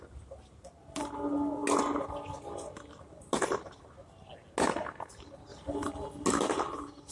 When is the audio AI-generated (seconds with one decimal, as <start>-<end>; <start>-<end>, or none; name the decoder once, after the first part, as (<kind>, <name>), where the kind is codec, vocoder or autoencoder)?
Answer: none